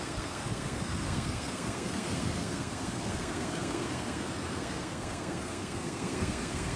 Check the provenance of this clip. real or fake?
fake